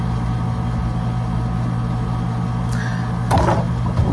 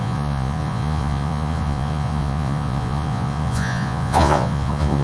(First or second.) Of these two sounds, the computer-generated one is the second